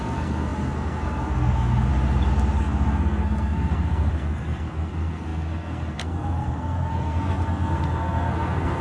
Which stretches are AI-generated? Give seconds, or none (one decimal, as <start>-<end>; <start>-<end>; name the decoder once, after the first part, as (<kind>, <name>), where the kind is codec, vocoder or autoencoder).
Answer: 0.0-1.9 (codec, SNAC); 2.6-8.8